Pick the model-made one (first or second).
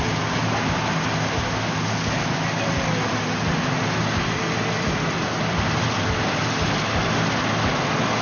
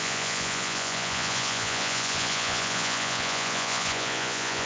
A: second